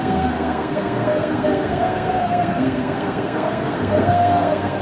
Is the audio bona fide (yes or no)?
no